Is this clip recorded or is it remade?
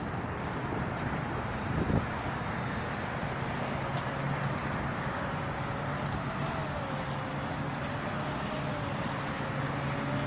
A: recorded